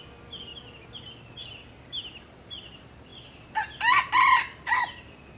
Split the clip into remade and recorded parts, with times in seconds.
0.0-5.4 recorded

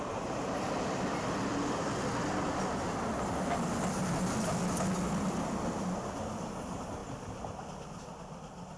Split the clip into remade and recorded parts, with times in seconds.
0.0-8.8 recorded

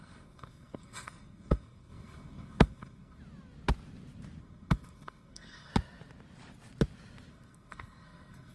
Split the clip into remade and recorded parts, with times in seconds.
0.0-3.2 remade; 3.2-4.4 recorded; 4.4-5.7 remade; 5.7-7.3 recorded; 7.3-8.5 remade

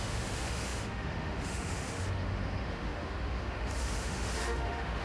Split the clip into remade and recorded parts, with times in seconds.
0.0-5.0 remade

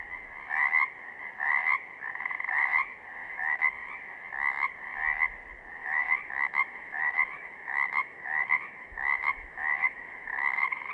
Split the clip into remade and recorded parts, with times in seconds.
0.0-3.2 recorded; 3.2-3.9 remade; 3.9-5.8 recorded; 5.8-10.9 remade

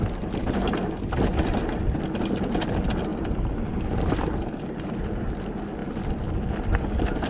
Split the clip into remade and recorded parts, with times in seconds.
0.0-0.4 recorded; 0.4-1.8 remade; 1.8-7.3 recorded